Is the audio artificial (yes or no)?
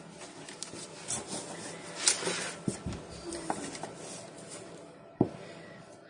no